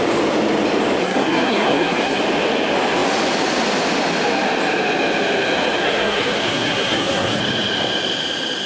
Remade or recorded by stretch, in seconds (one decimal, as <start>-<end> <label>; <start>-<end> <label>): 0.0-1.0 recorded; 1.0-2.2 remade; 2.2-5.8 recorded; 5.8-7.4 remade; 7.4-8.7 recorded